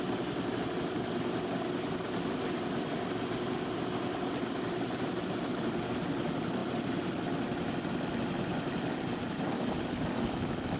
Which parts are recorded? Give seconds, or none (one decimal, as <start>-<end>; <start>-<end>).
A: 0.0-10.8